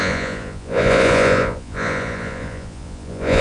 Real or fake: fake